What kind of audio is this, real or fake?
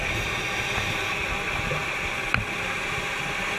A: real